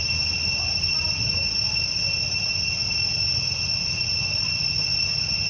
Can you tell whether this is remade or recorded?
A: recorded